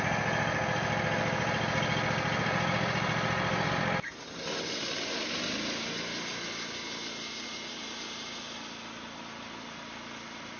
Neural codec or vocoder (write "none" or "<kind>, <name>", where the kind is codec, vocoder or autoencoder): none